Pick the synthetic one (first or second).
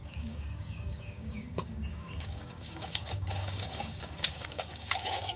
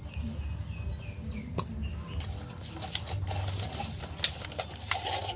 first